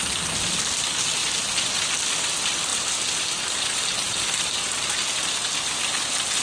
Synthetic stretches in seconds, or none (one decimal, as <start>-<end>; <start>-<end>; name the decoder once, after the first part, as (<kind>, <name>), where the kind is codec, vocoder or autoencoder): none